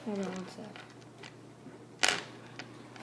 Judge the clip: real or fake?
real